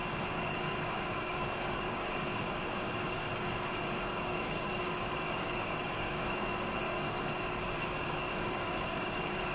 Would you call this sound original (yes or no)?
no